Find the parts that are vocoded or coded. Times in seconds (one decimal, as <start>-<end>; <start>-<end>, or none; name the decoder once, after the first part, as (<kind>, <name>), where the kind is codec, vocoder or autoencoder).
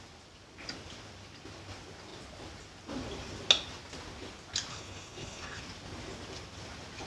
4.7-5.6 (codec, HILCodec)